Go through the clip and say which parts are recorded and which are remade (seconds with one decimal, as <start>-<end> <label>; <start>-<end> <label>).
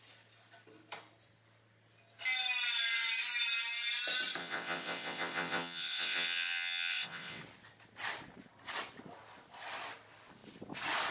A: 0.0-4.4 recorded; 4.4-7.4 remade; 7.4-11.1 recorded